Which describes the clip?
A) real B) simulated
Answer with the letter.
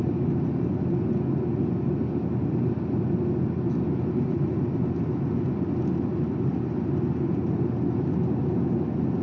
A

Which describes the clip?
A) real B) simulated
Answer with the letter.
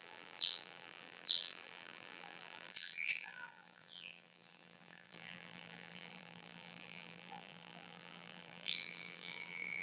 B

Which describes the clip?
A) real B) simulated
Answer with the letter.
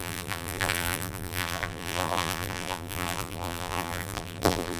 B